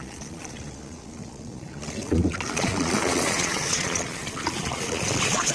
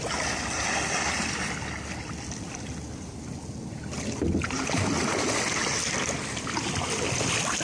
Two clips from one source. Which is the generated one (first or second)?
first